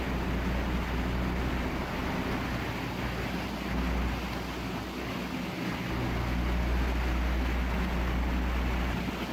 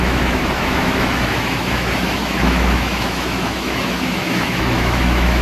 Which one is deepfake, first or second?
second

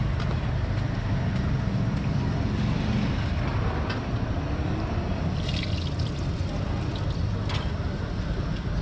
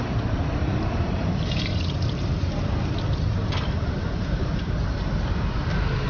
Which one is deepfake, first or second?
second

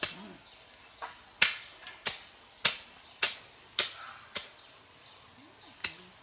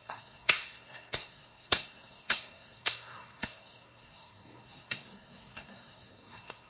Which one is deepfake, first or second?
second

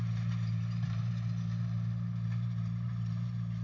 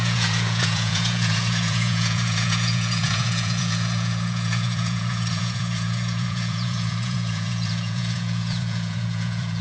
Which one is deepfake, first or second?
second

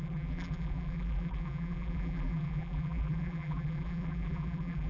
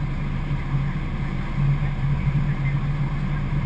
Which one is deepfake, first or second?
first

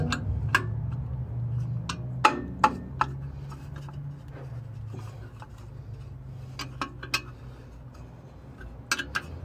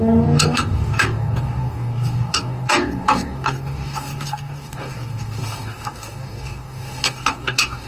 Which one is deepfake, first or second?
second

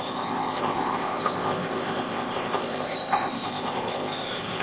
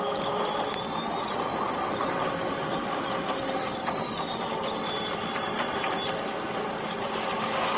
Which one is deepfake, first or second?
first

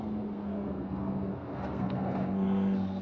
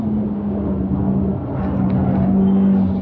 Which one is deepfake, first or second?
first